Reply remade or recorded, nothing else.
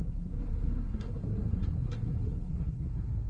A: remade